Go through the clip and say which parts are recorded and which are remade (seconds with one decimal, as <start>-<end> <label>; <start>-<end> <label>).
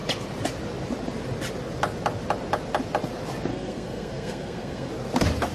0.0-3.5 recorded; 3.5-4.9 remade; 4.9-5.5 recorded